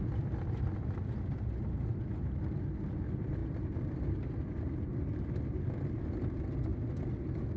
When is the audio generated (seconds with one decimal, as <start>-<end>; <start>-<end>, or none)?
none